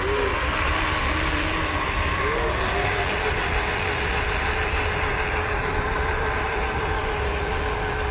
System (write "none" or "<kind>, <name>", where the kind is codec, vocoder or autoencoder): none